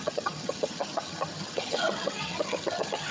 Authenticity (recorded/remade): remade